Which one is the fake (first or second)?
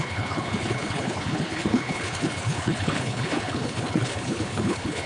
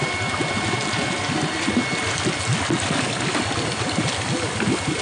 first